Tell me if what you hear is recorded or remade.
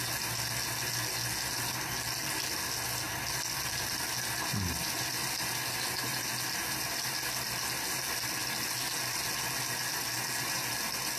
recorded